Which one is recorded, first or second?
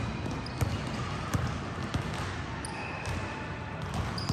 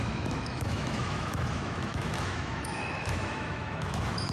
first